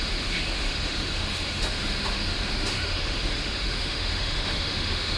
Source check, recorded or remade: remade